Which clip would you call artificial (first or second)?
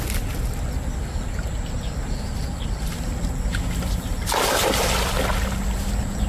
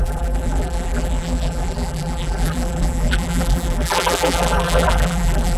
second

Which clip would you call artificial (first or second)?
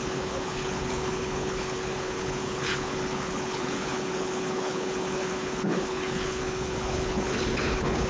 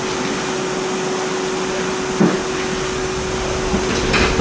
first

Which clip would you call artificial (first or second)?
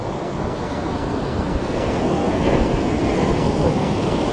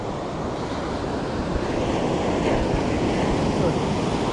first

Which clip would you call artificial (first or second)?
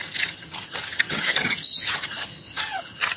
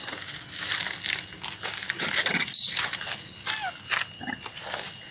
first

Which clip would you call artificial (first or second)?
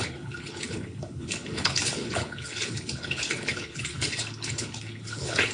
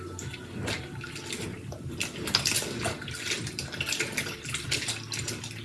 first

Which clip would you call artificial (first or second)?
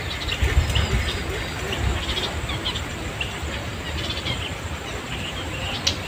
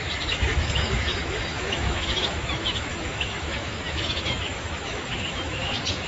second